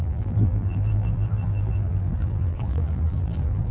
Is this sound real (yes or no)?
no